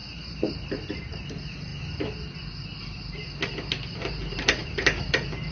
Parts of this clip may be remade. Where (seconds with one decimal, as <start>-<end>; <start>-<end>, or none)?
0.0-1.7; 3.7-5.5